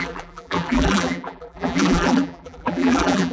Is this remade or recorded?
remade